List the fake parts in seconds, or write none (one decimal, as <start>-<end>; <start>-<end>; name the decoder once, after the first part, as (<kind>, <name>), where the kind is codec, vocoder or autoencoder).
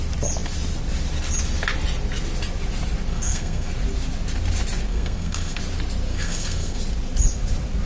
3.1-3.7 (codec, SNAC); 4.9-5.6; 6.1-6.8